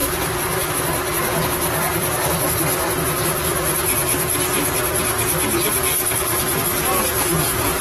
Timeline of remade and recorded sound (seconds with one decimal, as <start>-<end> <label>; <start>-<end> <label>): 0.0-0.7 remade; 0.7-1.9 recorded; 1.9-4.2 remade; 4.2-7.8 recorded